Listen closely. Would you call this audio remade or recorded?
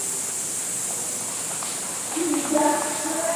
recorded